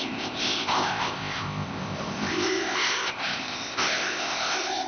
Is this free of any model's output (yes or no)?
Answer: no